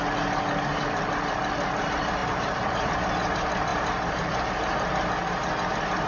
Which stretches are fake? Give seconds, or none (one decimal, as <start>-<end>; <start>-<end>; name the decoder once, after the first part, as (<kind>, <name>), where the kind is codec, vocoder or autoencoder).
2.2-2.9 (vocoder, BigVGAN v2)